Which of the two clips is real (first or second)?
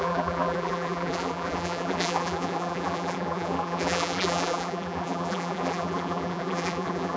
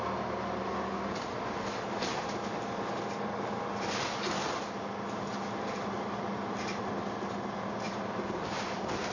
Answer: second